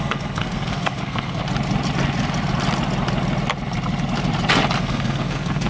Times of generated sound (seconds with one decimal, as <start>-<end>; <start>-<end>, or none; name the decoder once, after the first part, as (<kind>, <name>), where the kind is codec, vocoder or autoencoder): 0.0-1.4 (codec, SNAC); 4.8-5.7

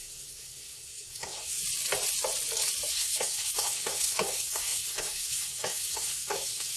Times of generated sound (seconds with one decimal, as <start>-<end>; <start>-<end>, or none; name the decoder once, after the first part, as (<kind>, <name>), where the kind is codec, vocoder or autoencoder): 0.0-1.6 (codec, SNAC); 2.9-6.8